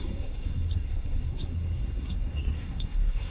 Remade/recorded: remade